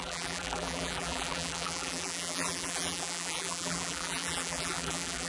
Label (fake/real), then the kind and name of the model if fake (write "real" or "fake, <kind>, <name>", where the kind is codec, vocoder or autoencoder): fake, vocoder, BigVGAN v2